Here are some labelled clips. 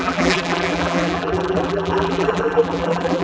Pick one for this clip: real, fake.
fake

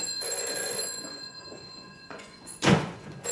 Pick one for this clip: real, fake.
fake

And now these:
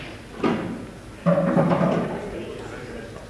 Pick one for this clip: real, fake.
real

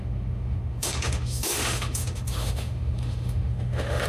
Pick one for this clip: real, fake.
fake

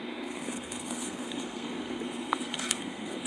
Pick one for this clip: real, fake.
fake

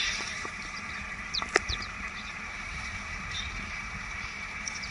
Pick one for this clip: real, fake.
fake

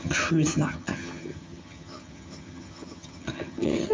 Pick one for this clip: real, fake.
fake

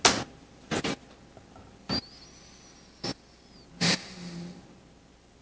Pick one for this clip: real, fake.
real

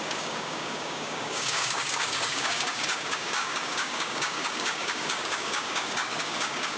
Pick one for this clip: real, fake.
fake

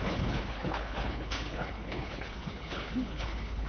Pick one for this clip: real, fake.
fake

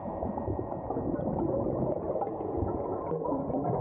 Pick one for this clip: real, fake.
fake